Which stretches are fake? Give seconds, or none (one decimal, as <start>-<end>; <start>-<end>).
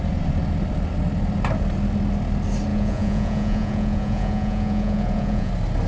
2.7-5.5